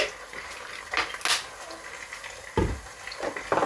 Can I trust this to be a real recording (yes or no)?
yes